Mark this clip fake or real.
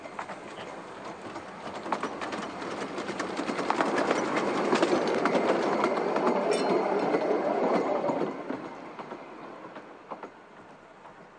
real